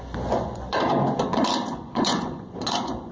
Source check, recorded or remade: remade